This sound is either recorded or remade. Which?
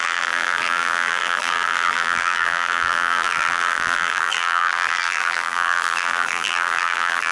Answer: remade